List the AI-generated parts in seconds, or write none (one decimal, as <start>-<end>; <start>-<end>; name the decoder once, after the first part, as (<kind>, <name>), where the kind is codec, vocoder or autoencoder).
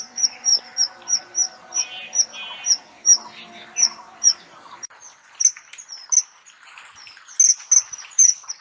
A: 0.0-0.5 (vocoder, BigVGAN v2); 1.2-3.1; 4.4-5.0; 7.9-8.6